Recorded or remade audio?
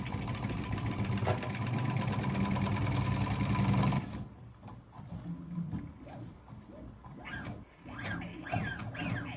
recorded